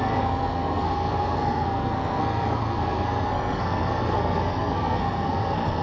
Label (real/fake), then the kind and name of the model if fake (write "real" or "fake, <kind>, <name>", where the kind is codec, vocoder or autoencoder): fake, codec, SNAC